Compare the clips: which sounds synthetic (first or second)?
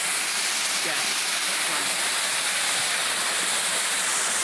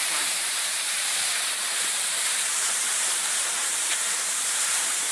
second